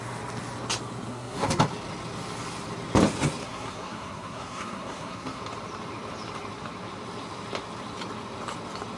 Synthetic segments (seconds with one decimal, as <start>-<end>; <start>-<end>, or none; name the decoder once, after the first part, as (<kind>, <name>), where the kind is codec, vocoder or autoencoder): 1.1-1.6 (codec, SNAC); 3.4-5.4